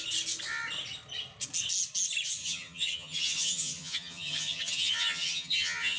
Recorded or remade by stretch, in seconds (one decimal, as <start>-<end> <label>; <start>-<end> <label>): 0.0-2.4 recorded; 2.4-6.0 remade